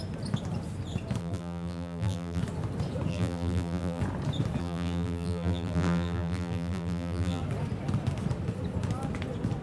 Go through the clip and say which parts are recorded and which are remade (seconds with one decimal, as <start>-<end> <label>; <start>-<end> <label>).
0.0-1.2 recorded; 1.2-2.4 remade; 2.4-3.1 recorded; 3.1-4.0 remade; 4.0-4.6 recorded; 4.6-7.4 remade; 7.4-9.6 recorded